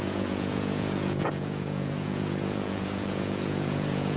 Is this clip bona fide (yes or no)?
no